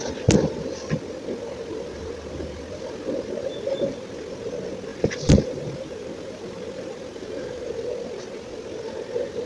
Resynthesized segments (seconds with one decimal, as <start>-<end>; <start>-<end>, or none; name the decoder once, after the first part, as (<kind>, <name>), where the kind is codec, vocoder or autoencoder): 4.9-7.7 (vocoder, BigVGAN v2)